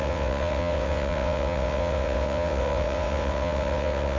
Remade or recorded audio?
remade